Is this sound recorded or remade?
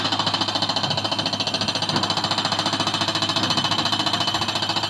recorded